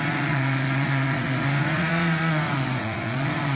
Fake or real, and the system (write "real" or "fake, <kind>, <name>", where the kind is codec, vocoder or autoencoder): fake, vocoder, Vocos